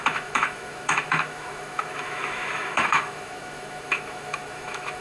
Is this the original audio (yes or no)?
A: no